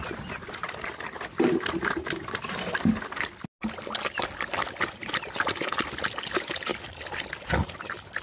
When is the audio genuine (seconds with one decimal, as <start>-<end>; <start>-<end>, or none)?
0.0-6.7; 7.3-8.2